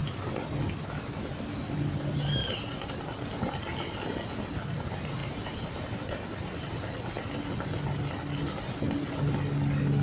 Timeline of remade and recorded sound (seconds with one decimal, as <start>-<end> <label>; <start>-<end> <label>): 0.0-2.4 recorded; 2.4-3.0 remade; 3.0-5.2 recorded; 5.2-5.8 remade; 5.8-10.0 recorded